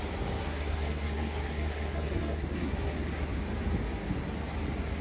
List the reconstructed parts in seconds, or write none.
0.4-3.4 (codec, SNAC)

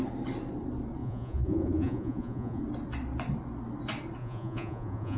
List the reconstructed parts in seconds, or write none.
1.0-2.6 (vocoder, Vocos); 4.2-5.2

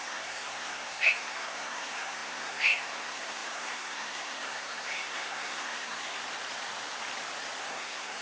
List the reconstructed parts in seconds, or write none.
0.0-6.2 (codec, SNAC); 7.6-8.2

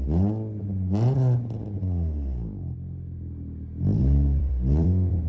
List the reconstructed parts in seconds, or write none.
3.9-5.3 (vocoder, BigVGAN v2)

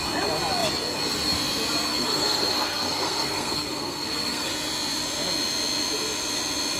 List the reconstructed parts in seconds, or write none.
1.9-4.5 (codec, SNAC)

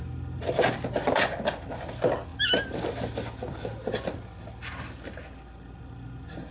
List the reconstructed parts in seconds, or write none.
none

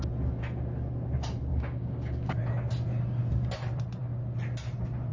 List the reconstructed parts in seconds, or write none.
1.5-2.4 (codec, DAC)

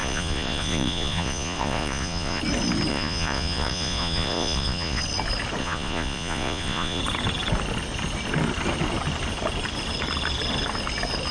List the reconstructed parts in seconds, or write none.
0.0-2.4 (vocoder, Vocos); 2.9-5.0; 5.6-7.0